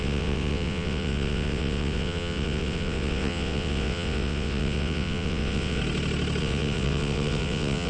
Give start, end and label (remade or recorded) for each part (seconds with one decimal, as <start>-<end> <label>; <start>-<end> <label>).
0.0-5.8 remade; 5.8-6.4 recorded; 6.4-7.9 remade